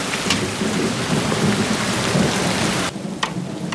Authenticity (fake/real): real